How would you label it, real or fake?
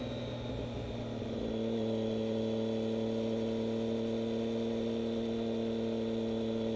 real